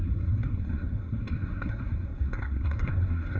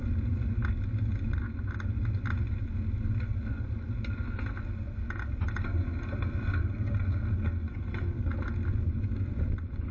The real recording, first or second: second